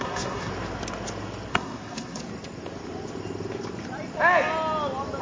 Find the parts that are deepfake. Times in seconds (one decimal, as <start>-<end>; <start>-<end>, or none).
0.0-0.5; 1.5-2.2

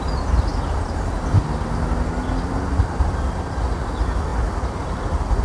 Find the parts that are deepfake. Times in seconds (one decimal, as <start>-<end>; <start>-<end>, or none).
none

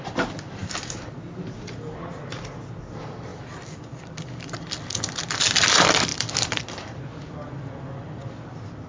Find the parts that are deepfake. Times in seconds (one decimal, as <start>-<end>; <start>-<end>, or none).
3.3-5.0; 6.1-6.6

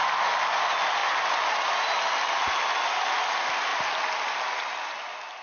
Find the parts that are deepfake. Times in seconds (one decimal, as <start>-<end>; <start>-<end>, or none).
0.6-1.0; 1.8-3.7; 4.5-5.4